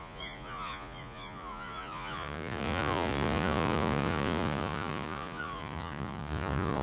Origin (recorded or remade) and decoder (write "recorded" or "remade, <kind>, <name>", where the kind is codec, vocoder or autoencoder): remade, vocoder, Vocos